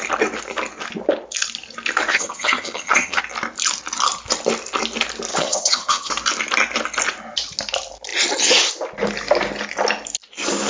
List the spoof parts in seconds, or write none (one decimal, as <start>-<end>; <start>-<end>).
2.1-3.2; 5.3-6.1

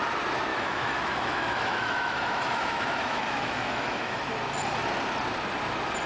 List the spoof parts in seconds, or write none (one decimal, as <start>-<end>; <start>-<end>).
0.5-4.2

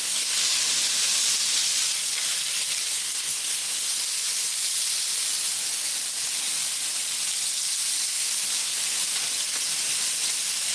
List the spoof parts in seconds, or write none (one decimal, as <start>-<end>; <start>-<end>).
0.0-0.4; 2.8-4.0; 8.1-8.8

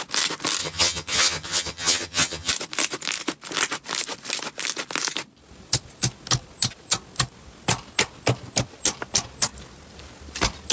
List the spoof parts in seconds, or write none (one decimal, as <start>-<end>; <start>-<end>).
0.6-2.5

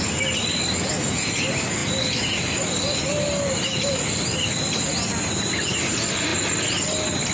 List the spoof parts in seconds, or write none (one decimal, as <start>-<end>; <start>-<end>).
1.8-4.4; 6.3-7.3